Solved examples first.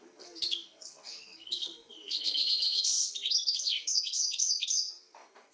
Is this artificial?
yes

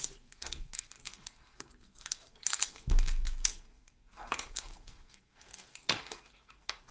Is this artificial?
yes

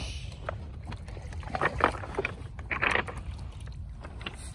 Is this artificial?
no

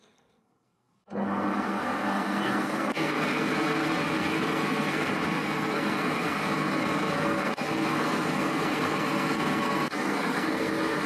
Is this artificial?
yes